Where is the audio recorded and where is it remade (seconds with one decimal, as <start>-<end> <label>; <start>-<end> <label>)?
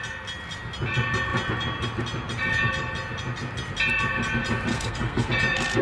0.0-4.7 recorded; 4.7-5.3 remade; 5.3-5.8 recorded